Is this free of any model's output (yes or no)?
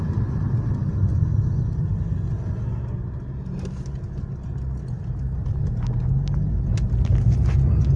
yes